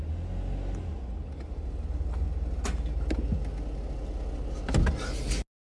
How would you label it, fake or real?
real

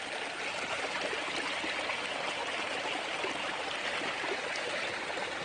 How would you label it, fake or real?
real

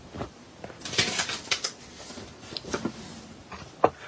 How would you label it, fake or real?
real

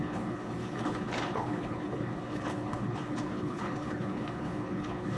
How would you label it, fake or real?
fake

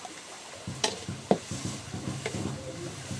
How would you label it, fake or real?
real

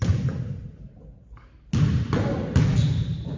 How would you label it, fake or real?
real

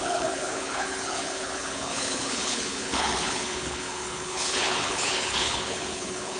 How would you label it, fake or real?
fake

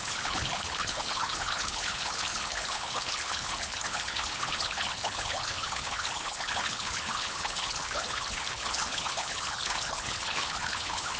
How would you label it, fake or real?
fake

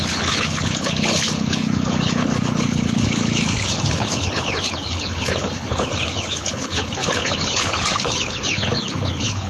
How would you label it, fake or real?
fake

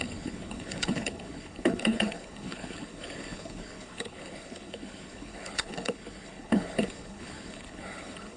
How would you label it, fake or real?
fake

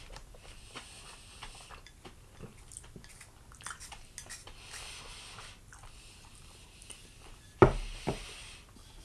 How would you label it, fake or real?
real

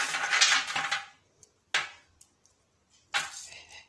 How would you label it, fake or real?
real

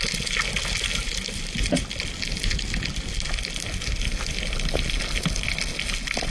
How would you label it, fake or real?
real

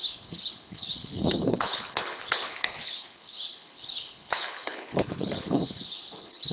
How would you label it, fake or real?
fake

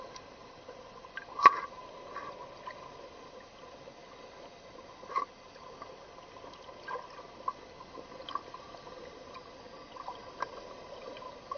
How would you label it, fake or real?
real